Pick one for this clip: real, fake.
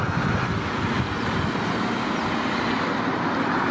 real